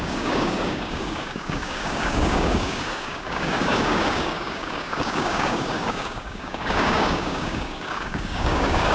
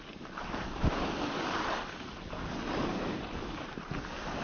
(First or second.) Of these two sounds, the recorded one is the second